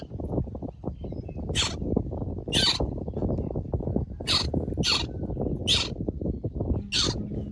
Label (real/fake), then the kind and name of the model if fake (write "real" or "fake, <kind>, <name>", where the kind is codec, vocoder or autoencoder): real